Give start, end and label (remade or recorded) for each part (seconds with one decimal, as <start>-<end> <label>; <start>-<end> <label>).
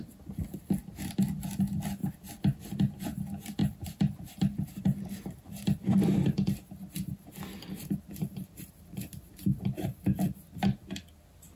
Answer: 0.0-3.6 recorded; 3.6-6.3 remade; 6.3-7.8 recorded; 7.8-10.0 remade; 10.0-11.6 recorded